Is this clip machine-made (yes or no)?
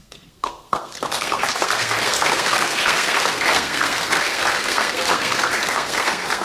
yes